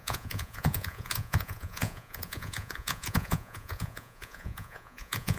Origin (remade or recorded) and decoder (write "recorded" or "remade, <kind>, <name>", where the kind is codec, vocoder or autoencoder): remade, vocoder, Vocos